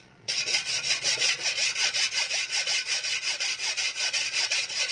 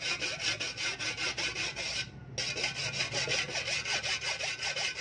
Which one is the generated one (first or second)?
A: first